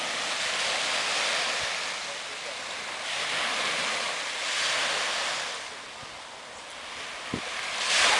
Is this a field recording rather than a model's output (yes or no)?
yes